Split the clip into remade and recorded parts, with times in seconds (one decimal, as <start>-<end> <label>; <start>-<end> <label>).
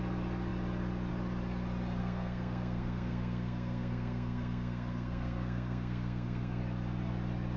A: 0.0-2.0 recorded; 2.0-6.6 remade; 6.6-7.6 recorded